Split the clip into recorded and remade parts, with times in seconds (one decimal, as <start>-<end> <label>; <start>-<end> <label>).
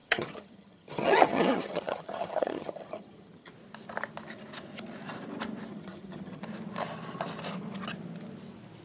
0.0-3.5 remade; 3.5-5.7 recorded; 5.7-6.4 remade; 6.4-8.8 recorded